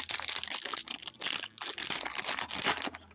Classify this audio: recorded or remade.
recorded